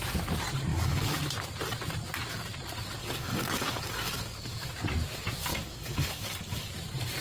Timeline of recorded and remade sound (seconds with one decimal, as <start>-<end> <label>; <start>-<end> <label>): 0.0-0.7 recorded; 0.7-1.2 remade; 1.2-3.0 recorded; 3.0-4.7 remade; 4.7-5.5 recorded; 5.5-6.7 remade; 6.7-7.2 recorded